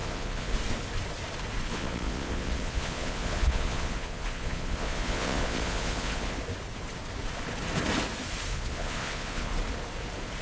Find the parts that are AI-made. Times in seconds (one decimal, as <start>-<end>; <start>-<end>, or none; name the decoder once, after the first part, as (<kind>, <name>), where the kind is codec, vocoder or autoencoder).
0.0-0.5 (vocoder, Vocos); 1.7-6.4; 8.5-9.5